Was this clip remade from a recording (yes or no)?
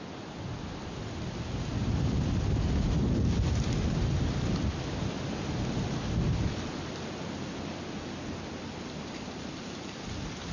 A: no